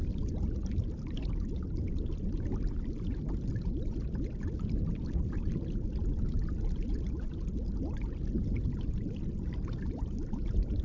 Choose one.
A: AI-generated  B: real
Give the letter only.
B